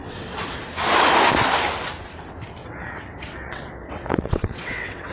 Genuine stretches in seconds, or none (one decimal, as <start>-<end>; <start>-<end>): 0.6-2.6